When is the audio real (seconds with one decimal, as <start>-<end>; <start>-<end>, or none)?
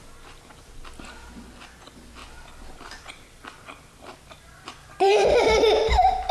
0.0-2.2; 5.4-6.3